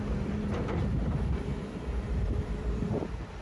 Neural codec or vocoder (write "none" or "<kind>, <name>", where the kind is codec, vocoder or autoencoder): vocoder, BigVGAN v2